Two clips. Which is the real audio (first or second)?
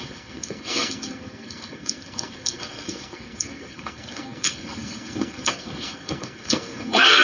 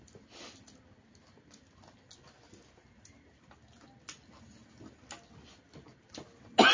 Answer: second